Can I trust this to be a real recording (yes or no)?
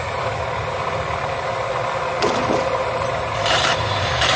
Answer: yes